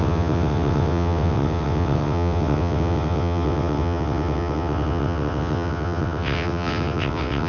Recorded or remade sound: remade